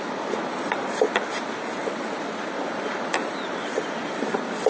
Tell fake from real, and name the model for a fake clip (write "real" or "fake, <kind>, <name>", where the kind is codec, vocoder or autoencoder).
real